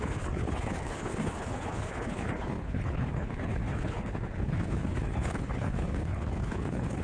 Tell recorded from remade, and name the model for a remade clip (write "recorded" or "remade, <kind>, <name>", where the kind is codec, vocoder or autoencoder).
remade, codec, HILCodec